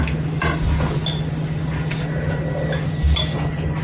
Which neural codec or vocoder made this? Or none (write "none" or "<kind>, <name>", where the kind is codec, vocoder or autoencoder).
none